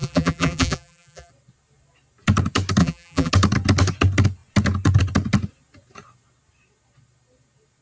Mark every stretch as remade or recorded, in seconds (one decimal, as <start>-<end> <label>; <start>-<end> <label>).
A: 0.0-1.3 remade; 1.3-2.8 recorded; 2.8-3.3 remade; 3.3-7.8 recorded